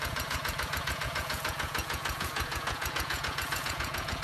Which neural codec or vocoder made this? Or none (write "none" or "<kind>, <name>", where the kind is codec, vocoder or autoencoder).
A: vocoder, Vocos